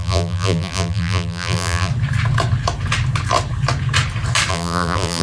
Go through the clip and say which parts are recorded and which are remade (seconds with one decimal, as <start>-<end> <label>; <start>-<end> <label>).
0.0-1.9 remade; 1.9-4.5 recorded; 4.5-5.2 remade